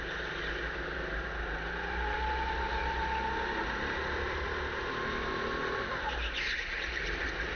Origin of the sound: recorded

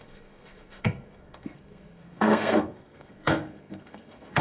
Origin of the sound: remade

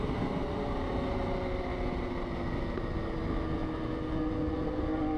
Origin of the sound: recorded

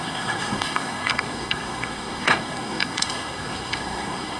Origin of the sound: remade